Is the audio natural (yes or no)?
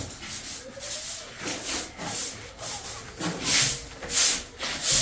yes